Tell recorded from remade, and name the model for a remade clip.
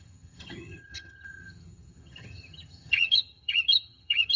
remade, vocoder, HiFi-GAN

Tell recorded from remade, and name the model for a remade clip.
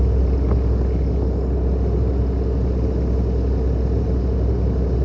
recorded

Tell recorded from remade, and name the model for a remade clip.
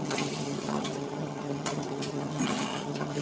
remade, vocoder, HiFi-GAN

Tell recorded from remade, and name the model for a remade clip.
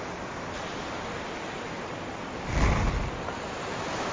recorded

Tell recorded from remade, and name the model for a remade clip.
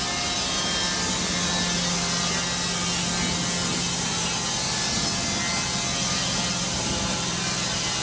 recorded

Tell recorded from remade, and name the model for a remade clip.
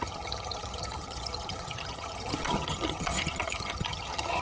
remade, vocoder, HiFi-GAN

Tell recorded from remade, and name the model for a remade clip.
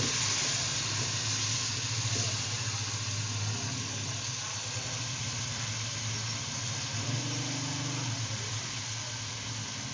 recorded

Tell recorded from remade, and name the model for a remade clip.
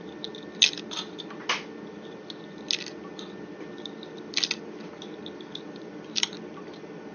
recorded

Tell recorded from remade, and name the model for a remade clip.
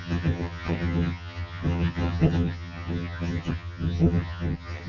remade, vocoder, HiFi-GAN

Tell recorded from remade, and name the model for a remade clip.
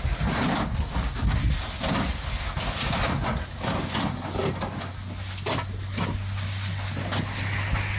recorded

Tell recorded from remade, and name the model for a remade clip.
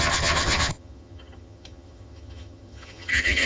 remade, vocoder, HiFi-GAN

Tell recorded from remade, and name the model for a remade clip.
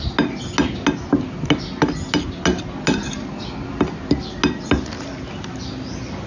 recorded